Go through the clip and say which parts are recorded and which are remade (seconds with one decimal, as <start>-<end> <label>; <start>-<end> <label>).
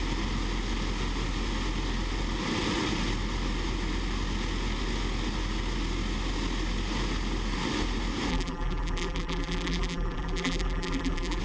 0.0-8.3 recorded; 8.3-11.4 remade